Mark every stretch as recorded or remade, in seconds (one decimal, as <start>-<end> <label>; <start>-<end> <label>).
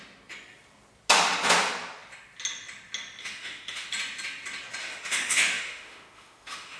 0.0-3.2 recorded; 3.2-3.9 remade; 3.9-4.8 recorded; 4.8-6.8 remade